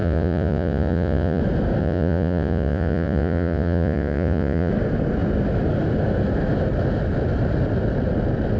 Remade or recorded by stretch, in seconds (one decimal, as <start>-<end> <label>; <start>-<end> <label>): 0.0-1.4 remade; 1.4-1.8 recorded; 1.8-4.7 remade; 4.7-8.6 recorded